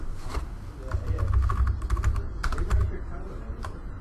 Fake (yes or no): no